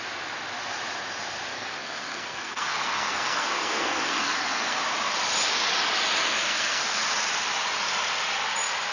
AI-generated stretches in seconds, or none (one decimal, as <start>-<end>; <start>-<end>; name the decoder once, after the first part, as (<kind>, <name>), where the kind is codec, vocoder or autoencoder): 1.5-4.8 (codec, SNAC); 6.4-7.0